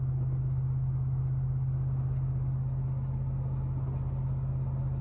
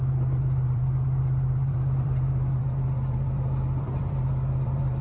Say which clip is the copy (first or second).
second